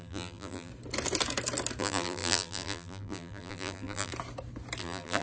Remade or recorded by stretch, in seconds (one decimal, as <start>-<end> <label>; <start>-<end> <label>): 0.0-0.7 remade; 0.7-1.8 recorded; 1.8-4.1 remade; 4.1-4.8 recorded; 4.8-5.2 remade